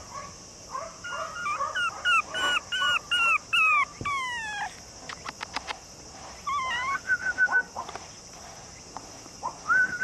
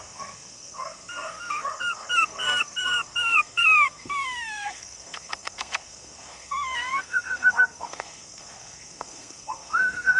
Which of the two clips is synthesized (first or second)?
second